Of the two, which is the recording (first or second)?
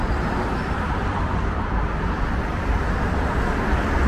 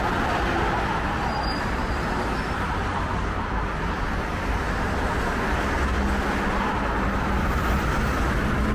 second